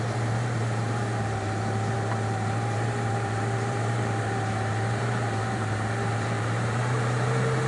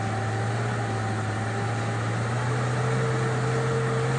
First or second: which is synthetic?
first